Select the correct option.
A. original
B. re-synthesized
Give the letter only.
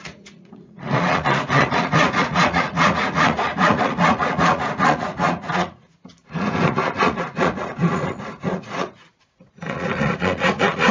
B